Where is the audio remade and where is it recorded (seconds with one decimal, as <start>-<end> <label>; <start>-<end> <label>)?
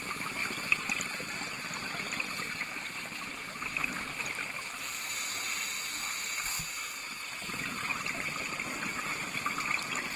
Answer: 0.0-6.0 recorded; 6.0-6.6 remade; 6.6-7.9 recorded; 7.9-8.6 remade; 8.6-10.2 recorded